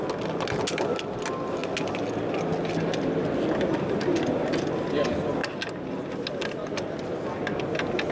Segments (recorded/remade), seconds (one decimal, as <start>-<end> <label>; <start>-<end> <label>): 0.0-8.1 recorded